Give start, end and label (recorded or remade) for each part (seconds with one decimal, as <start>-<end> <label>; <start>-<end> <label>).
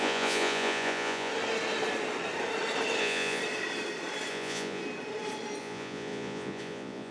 0.0-1.3 remade; 1.3-3.0 recorded; 3.0-3.4 remade; 3.4-4.3 recorded; 4.3-4.8 remade; 4.8-5.6 recorded; 5.6-7.1 remade